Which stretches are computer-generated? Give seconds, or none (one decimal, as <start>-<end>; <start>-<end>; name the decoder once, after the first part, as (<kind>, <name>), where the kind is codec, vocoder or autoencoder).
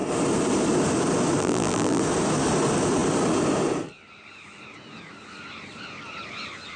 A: 1.4-2.0 (vocoder, BigVGAN v2)